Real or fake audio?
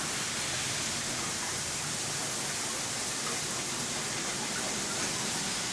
real